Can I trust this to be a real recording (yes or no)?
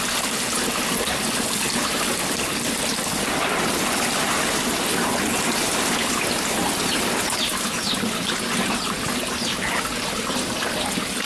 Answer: yes